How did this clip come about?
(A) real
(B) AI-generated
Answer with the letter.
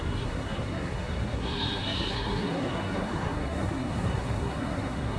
B